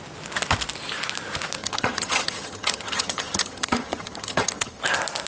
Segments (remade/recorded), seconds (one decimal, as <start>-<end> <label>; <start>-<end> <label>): 0.0-1.6 recorded; 1.6-4.8 remade; 4.8-5.3 recorded